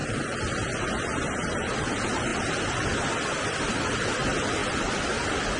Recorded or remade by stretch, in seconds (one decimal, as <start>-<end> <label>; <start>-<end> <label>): 0.0-5.6 recorded